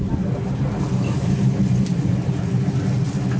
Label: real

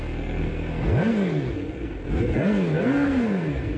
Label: fake